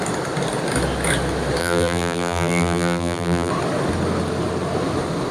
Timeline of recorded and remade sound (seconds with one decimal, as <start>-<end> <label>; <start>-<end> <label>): 0.0-1.6 recorded; 1.6-3.5 remade; 3.5-5.3 recorded